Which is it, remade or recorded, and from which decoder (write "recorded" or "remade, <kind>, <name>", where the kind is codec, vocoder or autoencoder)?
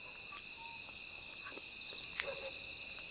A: recorded